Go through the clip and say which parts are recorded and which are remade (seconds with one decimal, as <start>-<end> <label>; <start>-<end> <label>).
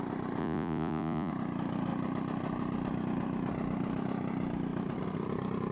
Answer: 0.0-0.4 recorded; 0.4-1.3 remade; 1.3-5.7 recorded